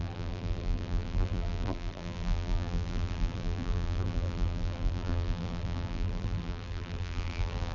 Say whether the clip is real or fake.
fake